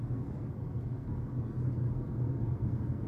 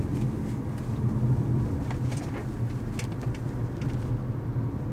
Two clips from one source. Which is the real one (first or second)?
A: second